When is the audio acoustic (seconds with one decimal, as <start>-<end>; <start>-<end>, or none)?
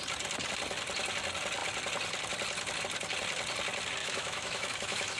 0.0-4.0